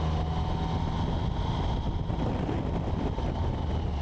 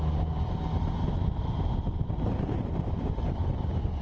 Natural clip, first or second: first